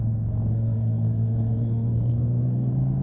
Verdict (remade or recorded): remade